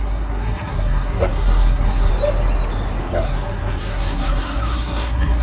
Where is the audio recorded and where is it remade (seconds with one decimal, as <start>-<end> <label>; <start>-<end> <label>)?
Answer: 0.0-2.1 remade; 2.1-3.1 recorded; 3.1-5.4 remade

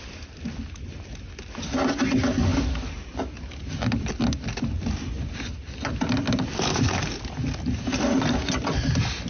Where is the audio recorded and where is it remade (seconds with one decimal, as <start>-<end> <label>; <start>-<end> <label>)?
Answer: 0.0-2.5 recorded; 2.5-4.1 remade; 4.1-9.3 recorded

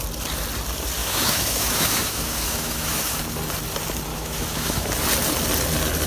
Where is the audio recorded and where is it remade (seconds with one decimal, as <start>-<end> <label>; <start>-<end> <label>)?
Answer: 0.0-1.0 recorded; 1.0-3.2 remade; 3.2-4.1 recorded; 4.1-4.9 remade; 4.9-6.1 recorded